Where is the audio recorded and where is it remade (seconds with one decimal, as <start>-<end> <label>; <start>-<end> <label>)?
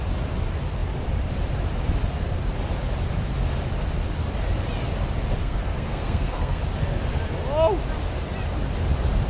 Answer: 0.0-5.4 recorded; 5.4-6.6 remade; 6.6-9.3 recorded